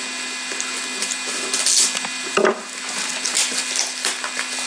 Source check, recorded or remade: recorded